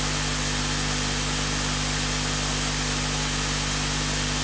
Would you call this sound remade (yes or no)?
no